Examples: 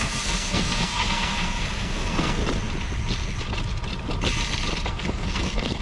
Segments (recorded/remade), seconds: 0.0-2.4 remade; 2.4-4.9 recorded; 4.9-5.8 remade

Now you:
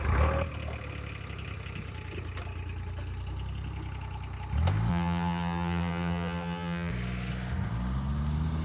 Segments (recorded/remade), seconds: 0.0-4.9 recorded; 4.9-6.9 remade; 6.9-8.6 recorded

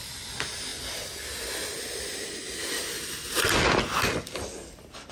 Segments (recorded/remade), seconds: 0.0-5.1 recorded

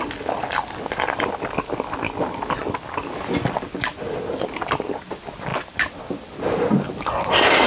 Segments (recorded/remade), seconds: 0.0-7.7 recorded

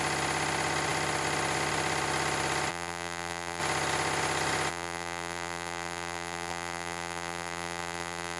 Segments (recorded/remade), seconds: 0.0-2.7 recorded; 2.7-3.6 remade; 3.6-4.7 recorded; 4.7-8.4 remade

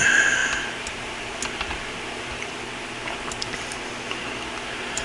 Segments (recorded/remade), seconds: 0.0-0.4 recorded; 0.4-2.5 remade; 2.5-5.0 recorded

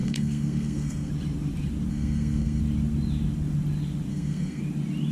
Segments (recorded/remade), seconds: 0.0-1.1 remade; 1.1-1.9 recorded; 1.9-2.6 remade; 2.6-4.1 recorded; 4.1-4.6 remade; 4.6-5.1 recorded

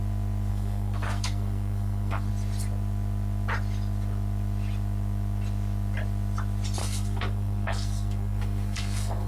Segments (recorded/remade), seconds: 0.0-0.5 recorded; 0.5-2.3 remade; 2.3-6.8 recorded; 6.8-9.3 remade